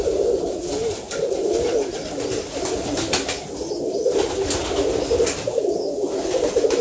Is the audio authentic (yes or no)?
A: yes